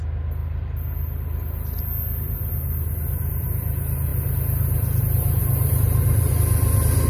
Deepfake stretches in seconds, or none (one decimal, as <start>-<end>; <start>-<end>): 5.4-6.3